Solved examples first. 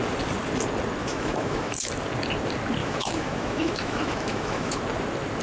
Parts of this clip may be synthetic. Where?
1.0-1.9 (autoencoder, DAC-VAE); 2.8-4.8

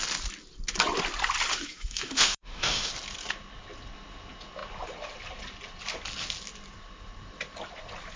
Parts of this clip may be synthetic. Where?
1.5-2.9 (autoencoder, DAC-VAE)